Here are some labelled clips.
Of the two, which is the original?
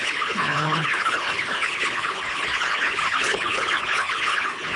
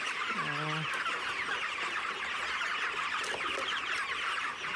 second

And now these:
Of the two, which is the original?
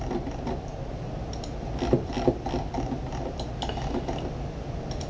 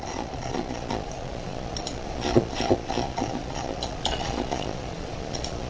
first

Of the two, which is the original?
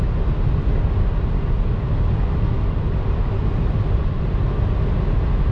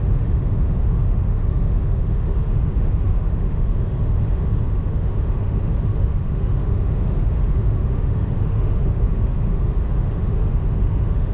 first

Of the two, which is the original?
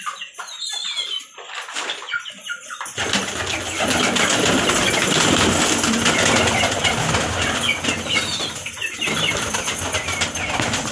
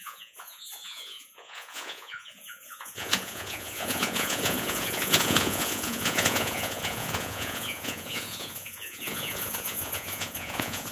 first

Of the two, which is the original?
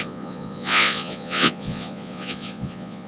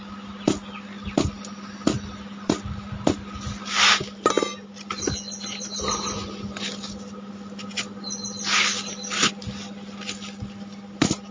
second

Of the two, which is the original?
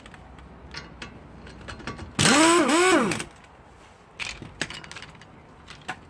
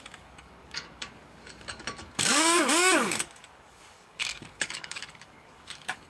first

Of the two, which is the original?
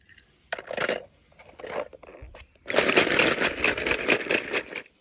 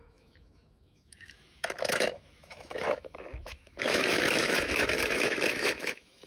first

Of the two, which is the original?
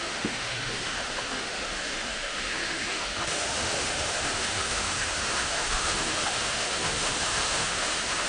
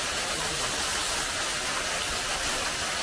second